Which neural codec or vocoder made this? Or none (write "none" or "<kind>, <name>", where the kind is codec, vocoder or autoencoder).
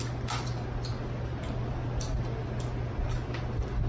none